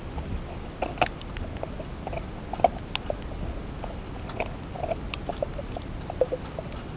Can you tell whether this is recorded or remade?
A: recorded